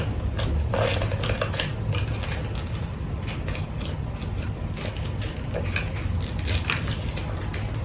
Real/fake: real